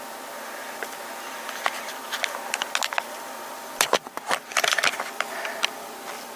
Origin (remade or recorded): recorded